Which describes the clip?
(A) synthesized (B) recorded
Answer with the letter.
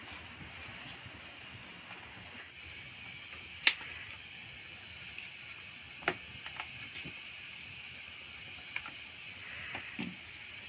B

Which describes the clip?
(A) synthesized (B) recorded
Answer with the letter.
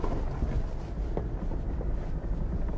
B